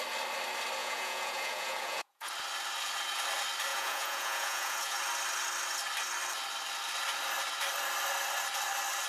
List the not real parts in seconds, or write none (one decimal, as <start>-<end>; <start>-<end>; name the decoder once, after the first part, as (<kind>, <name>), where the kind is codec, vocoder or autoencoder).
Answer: 0.8-2.3 (vocoder, Vocos); 3.7-5.0